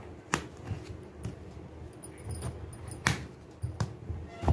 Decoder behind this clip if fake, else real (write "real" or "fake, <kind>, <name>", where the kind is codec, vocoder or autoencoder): real